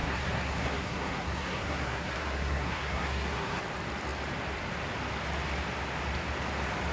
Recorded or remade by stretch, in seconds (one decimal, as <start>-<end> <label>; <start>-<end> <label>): 0.0-3.6 remade; 3.6-6.9 recorded